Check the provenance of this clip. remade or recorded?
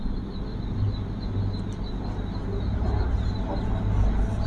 recorded